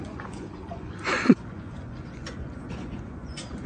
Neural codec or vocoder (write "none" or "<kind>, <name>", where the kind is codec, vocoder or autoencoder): vocoder, Vocos